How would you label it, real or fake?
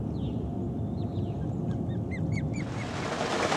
real